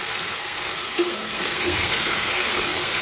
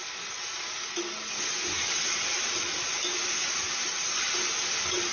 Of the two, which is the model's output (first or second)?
first